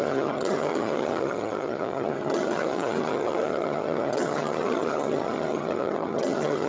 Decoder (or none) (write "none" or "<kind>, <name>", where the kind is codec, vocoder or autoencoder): vocoder, HiFi-GAN